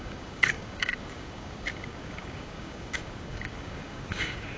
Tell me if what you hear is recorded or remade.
remade